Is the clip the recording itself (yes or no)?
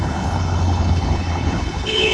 no